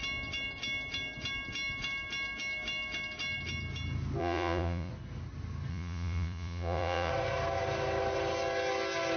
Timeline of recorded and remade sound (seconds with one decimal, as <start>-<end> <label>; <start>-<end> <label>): 0.0-4.2 recorded; 4.2-4.9 remade; 4.9-5.7 recorded; 5.7-7.1 remade; 7.1-9.2 recorded